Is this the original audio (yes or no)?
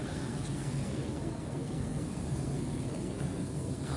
no